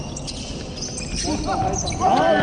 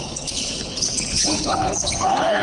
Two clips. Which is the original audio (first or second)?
first